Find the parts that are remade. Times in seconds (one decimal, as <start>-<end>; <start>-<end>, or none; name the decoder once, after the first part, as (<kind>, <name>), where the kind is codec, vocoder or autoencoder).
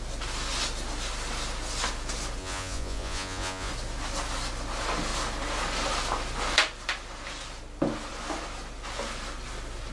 2.4-3.7 (vocoder, Vocos)